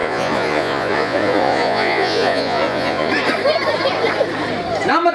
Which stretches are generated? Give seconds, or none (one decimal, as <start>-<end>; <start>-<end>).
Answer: 0.0-3.1